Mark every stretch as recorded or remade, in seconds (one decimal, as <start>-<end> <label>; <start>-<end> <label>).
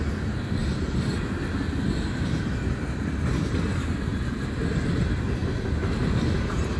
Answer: 0.0-6.8 recorded